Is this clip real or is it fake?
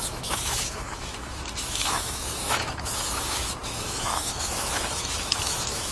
fake